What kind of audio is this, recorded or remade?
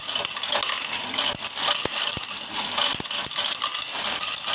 recorded